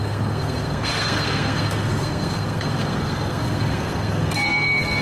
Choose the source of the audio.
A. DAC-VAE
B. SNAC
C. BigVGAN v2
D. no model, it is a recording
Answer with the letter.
B